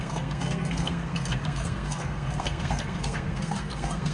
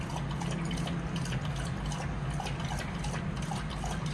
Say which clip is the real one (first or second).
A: second